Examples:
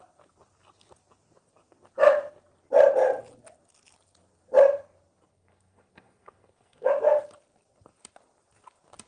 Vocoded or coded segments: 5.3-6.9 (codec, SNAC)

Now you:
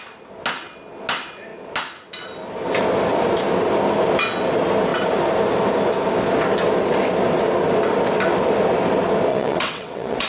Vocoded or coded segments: 9.3-10.3 (vocoder, WaveNeXt)